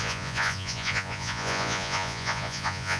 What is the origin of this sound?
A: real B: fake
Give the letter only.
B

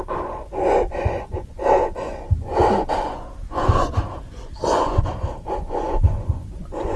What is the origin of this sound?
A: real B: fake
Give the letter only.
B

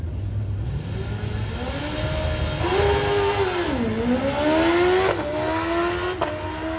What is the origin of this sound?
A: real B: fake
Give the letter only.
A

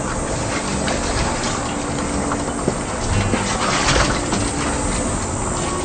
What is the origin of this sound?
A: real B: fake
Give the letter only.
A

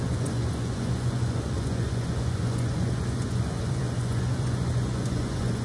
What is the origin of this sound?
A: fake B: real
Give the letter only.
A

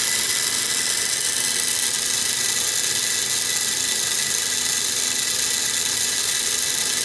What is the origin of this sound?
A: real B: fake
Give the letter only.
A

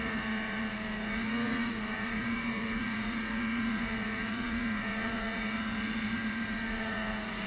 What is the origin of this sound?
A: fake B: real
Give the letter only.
A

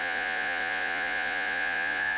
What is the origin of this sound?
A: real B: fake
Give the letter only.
B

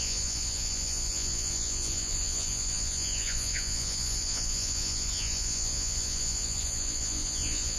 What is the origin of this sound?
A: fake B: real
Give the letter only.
A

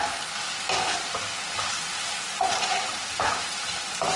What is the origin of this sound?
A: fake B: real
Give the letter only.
B